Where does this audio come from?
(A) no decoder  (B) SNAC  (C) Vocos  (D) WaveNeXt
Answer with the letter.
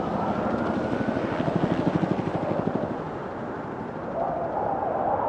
A